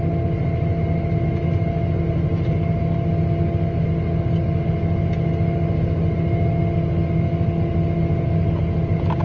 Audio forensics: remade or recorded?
recorded